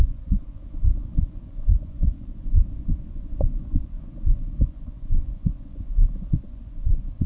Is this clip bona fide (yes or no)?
no